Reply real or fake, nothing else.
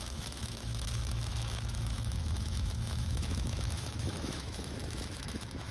fake